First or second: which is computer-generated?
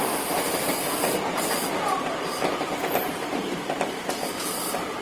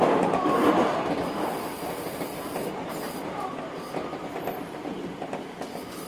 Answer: first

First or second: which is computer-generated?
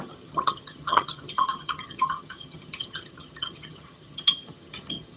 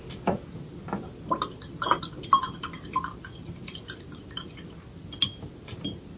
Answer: first